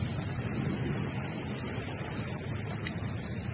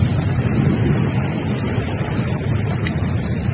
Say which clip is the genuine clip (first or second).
first